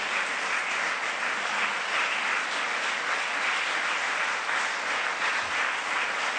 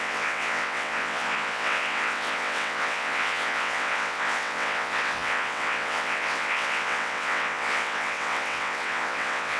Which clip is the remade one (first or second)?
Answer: second